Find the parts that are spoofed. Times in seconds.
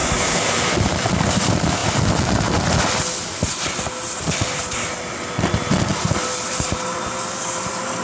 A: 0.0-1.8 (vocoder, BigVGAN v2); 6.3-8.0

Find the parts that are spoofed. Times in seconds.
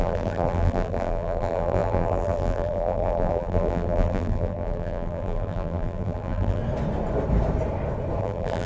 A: 0.0-6.6 (vocoder, BigVGAN v2); 8.2-8.7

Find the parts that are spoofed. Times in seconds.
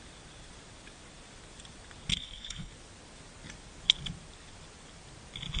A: 2.1-2.7 (codec, HILCodec)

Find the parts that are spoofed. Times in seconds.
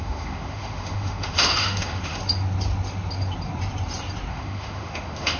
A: 0.0-2.2 (autoencoder, DAC-VAE); 4.3-5.4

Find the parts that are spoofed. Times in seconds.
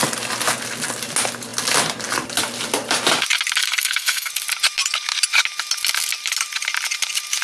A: 3.6-4.3 (codec, SNAC)